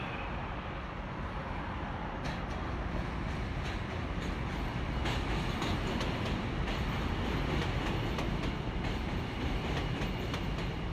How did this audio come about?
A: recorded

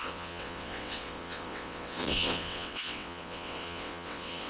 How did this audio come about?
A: remade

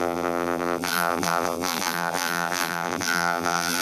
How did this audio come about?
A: remade